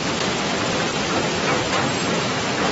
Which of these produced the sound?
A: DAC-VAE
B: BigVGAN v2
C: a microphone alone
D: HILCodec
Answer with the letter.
C